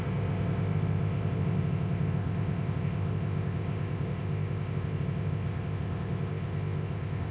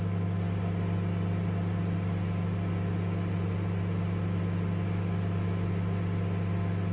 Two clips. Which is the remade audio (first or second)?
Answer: first